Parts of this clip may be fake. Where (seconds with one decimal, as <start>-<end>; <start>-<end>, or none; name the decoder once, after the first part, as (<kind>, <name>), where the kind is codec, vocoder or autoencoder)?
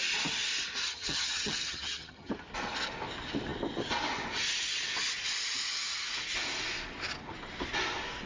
0.8-2.3 (vocoder, HiFi-GAN)